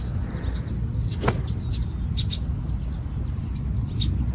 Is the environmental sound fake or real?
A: real